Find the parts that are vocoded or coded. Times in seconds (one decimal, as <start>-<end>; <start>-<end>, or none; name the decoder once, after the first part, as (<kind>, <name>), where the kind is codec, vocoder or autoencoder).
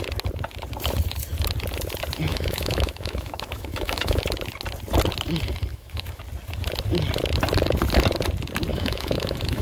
2.3-4.2 (autoencoder, DAC-VAE); 5.7-6.2; 8.7-9.6